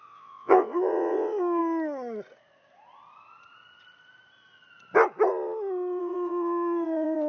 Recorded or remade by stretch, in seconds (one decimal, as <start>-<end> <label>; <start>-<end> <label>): 0.0-1.6 remade; 1.6-6.0 recorded; 6.0-7.3 remade